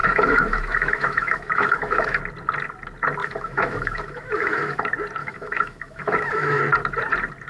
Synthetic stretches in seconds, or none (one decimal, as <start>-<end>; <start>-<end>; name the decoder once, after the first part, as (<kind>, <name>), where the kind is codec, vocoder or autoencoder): 0.0-2.2 (autoencoder, DAC-VAE); 3.2-4.8; 5.2-6.6